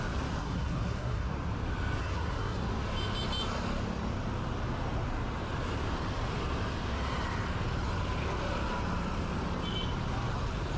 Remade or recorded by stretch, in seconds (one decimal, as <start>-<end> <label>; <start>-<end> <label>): 0.0-0.4 recorded; 0.4-1.3 remade; 1.3-2.0 recorded; 2.0-2.7 remade; 2.7-10.8 recorded